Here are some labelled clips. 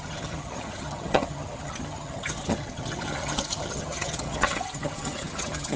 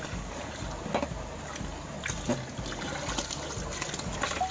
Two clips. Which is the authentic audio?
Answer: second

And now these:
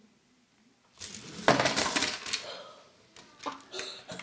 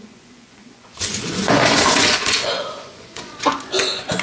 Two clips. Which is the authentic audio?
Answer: first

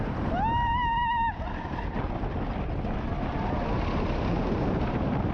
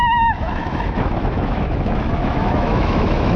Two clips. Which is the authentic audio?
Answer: first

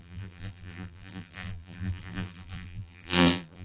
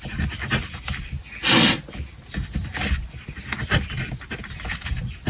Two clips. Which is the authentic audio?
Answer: second